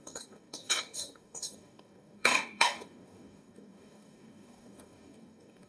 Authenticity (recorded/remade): remade